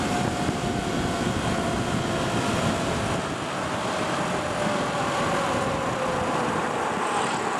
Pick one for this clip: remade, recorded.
recorded